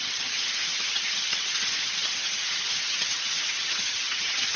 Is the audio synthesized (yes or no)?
yes